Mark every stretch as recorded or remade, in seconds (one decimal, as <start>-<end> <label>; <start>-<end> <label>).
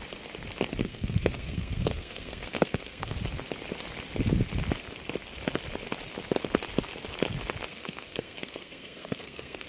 0.0-0.8 recorded; 0.8-3.1 remade; 3.1-7.7 recorded; 7.7-9.7 remade